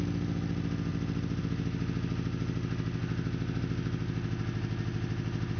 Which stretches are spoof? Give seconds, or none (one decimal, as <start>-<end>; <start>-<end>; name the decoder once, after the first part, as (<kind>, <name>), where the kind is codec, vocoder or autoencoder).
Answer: none